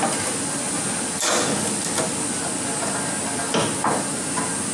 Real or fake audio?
real